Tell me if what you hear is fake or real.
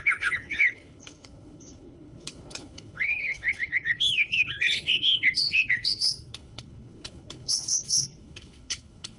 fake